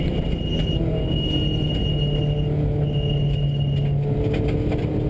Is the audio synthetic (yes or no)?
no